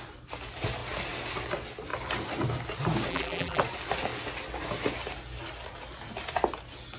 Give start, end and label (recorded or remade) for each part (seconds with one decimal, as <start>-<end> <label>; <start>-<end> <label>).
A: 0.0-3.1 recorded; 3.1-3.6 remade; 3.6-7.0 recorded